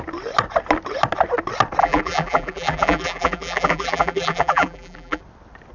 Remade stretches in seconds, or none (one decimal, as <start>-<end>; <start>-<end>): 1.8-5.2